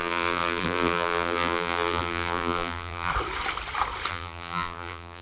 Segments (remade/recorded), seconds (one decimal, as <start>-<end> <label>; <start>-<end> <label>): 0.0-3.1 remade; 3.1-4.1 recorded; 4.1-5.2 remade